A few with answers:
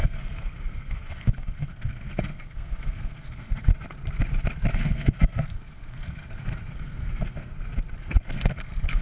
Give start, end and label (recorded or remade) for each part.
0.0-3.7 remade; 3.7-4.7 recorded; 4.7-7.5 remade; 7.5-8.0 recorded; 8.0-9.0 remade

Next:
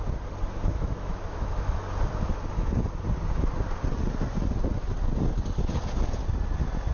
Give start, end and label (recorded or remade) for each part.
0.0-0.7 recorded; 0.7-1.8 remade; 1.8-6.9 recorded

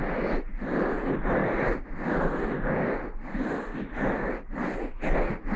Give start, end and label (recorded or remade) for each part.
0.0-5.6 recorded

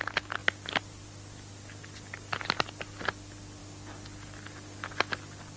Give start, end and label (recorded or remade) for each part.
0.0-5.6 recorded

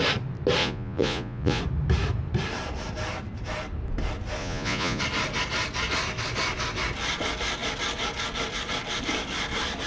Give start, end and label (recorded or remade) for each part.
0.0-0.6 recorded; 0.6-1.6 remade; 1.6-4.4 recorded; 4.4-5.0 remade; 5.0-9.9 recorded

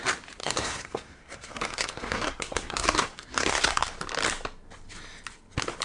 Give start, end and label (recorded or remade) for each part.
0.0-0.4 recorded; 0.4-3.9 remade; 3.9-5.8 recorded

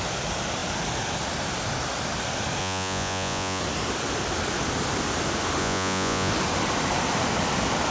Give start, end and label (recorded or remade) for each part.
0.0-2.6 recorded; 2.6-3.6 remade; 3.6-5.6 recorded; 5.6-6.3 remade; 6.3-7.9 recorded